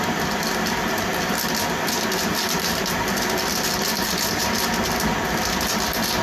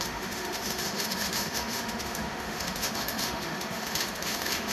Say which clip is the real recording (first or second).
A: first